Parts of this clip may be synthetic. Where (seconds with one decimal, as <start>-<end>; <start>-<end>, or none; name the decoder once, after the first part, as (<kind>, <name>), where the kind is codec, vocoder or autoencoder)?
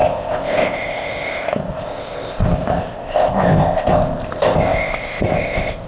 0.0-5.9 (codec, ZipCodec)